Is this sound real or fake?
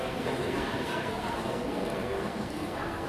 fake